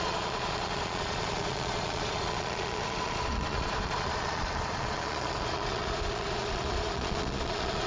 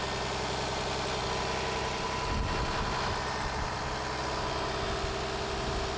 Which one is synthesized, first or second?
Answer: first